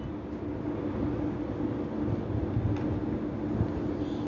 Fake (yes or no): no